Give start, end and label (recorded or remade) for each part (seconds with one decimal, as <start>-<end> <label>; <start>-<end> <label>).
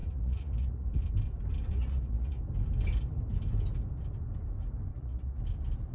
0.0-1.0 remade; 1.0-1.7 recorded; 1.7-2.4 remade; 2.4-4.9 recorded; 4.9-5.4 remade; 5.4-5.9 recorded